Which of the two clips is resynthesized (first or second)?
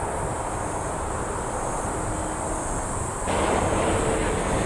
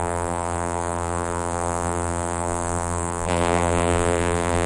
second